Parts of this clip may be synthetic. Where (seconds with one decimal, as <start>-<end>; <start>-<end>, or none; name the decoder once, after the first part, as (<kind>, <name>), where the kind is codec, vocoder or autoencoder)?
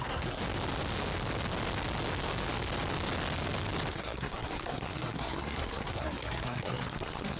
0.0-0.4 (codec, SNAC); 3.9-7.4